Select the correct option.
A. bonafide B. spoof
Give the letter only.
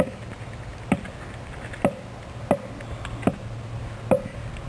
A